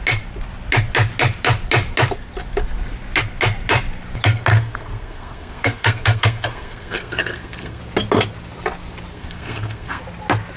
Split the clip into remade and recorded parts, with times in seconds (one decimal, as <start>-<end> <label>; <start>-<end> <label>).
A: 0.0-4.5 recorded; 4.5-7.8 remade; 7.8-9.1 recorded; 9.1-10.0 remade; 10.0-10.6 recorded